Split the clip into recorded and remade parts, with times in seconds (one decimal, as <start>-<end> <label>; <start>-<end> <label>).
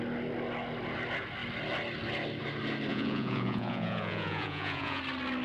0.0-2.9 recorded; 2.9-5.0 remade; 5.0-5.4 recorded